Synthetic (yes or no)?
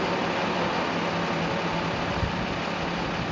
no